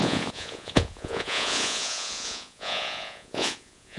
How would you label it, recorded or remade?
remade